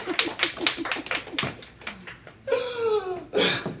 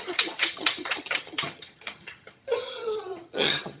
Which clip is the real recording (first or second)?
first